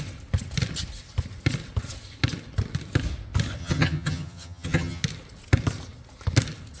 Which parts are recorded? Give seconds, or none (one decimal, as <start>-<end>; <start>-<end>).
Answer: 0.0-3.6; 5.0-6.8